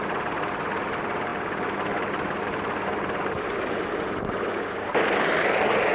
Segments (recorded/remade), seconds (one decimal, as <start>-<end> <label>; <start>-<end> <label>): 0.0-5.9 recorded

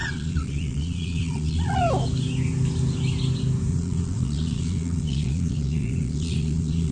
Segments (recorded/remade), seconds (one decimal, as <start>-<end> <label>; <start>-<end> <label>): 0.0-1.8 remade; 1.8-3.7 recorded; 3.7-6.9 remade